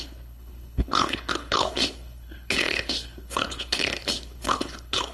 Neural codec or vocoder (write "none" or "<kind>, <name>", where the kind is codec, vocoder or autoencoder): codec, HILCodec